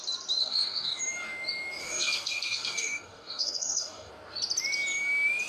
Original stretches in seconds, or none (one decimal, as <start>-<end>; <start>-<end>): 0.0-0.4; 1.0-1.8; 4.1-5.5